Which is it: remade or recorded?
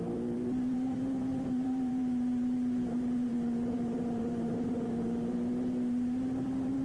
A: remade